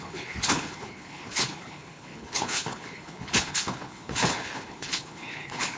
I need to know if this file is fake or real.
fake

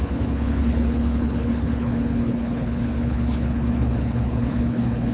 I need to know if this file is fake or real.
fake